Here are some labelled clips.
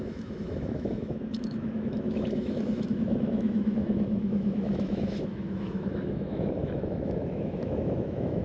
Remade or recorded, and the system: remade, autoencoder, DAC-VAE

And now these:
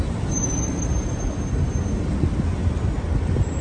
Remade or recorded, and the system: recorded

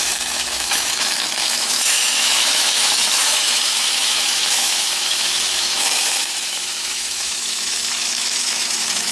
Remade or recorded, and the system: remade, autoencoder, DAC-VAE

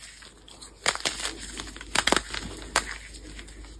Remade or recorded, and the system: recorded